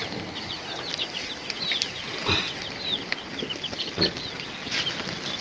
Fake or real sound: real